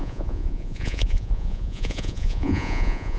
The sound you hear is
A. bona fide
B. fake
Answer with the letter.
B